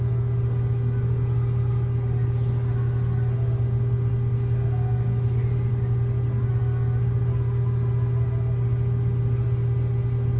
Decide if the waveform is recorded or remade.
recorded